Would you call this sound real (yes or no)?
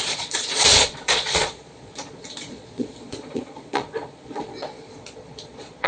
no